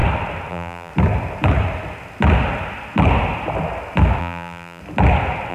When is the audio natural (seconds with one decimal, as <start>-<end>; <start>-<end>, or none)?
0.0-0.5; 0.9-4.2; 4.8-5.5